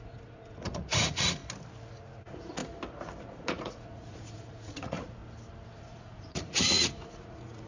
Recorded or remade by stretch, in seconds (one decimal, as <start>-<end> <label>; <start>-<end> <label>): 0.0-1.4 remade; 1.4-1.9 recorded; 1.9-2.6 remade; 2.6-3.2 recorded; 3.2-5.2 remade; 5.2-5.8 recorded; 5.8-7.7 remade